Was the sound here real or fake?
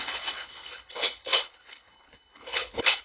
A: fake